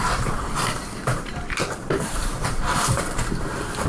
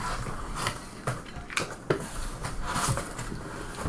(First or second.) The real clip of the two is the second